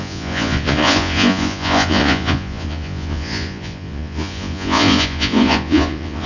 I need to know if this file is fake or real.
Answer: fake